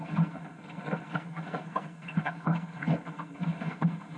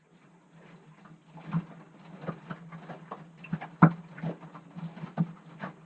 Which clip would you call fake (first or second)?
first